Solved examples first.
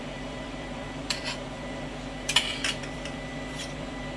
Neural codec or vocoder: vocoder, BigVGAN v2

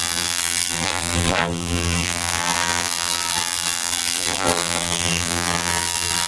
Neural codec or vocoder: vocoder, BigVGAN v2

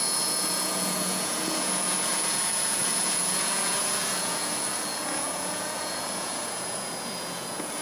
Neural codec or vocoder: vocoder, Vocos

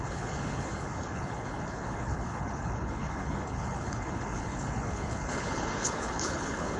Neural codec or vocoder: codec, HILCodec